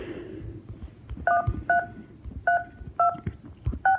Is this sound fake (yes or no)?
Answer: no